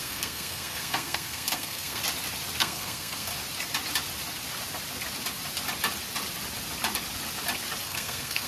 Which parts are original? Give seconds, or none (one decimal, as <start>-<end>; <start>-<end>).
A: 2.0-2.6; 3.3-7.8